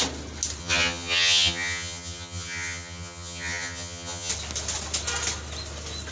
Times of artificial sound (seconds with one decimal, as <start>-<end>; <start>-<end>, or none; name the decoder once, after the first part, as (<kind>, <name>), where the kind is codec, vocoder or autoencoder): 0.6-4.3 (vocoder, HiFi-GAN)